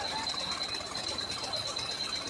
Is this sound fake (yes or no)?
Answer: no